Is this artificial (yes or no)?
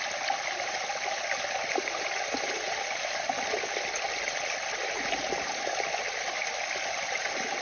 no